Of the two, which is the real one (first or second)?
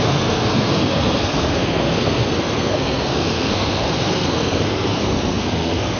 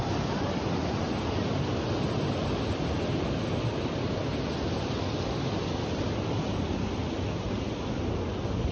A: second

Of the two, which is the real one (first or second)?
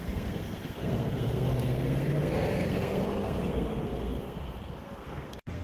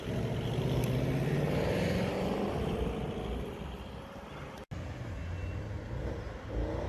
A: second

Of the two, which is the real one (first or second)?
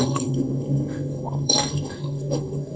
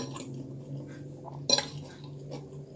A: second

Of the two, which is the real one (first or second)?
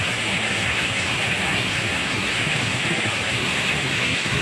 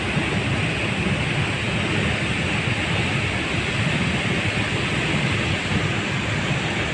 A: second